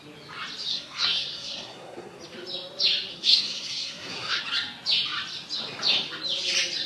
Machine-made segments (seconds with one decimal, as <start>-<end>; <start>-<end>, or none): 0.7-2.2; 3.1-4.4